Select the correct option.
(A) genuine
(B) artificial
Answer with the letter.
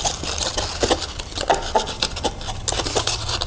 A